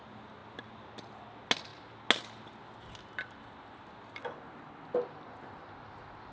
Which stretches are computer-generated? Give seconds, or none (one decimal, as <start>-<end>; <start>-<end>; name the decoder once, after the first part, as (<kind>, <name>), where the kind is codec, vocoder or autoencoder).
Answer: none